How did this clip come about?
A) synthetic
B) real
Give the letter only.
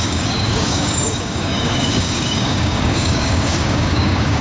A